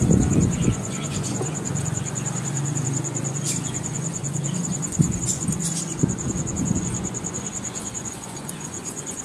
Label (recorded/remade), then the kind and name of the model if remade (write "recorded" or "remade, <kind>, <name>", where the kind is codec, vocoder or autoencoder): remade, vocoder, Vocos